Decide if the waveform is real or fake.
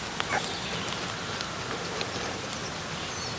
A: real